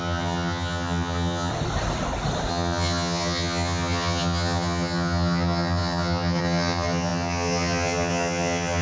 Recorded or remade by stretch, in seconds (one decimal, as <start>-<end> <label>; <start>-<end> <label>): 0.0-1.5 remade; 1.5-2.5 recorded; 2.5-8.8 remade